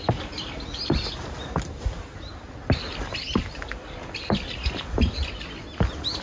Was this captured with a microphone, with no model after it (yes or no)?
yes